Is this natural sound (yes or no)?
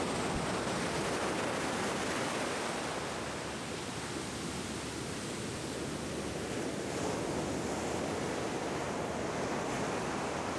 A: yes